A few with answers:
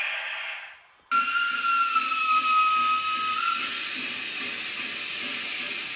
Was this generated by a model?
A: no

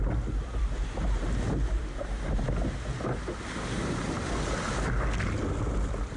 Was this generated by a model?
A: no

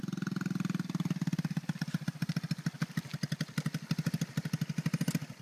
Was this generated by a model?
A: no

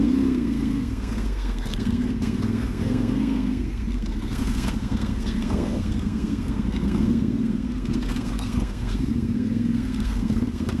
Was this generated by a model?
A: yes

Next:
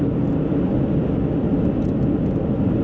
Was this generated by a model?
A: no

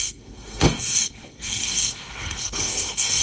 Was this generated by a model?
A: yes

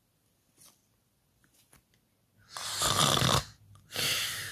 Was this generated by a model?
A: no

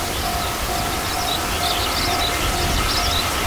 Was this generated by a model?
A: no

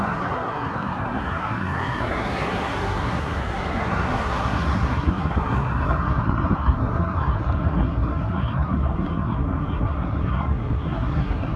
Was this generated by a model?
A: yes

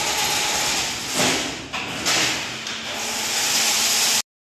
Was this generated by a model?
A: no